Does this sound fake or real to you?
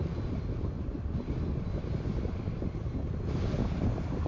real